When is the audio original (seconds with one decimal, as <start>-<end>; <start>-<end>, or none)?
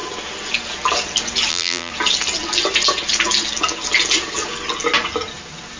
0.0-1.5; 1.9-5.8